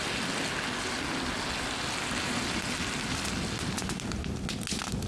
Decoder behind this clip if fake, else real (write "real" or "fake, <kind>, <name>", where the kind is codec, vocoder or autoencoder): real